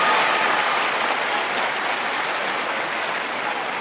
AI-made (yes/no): no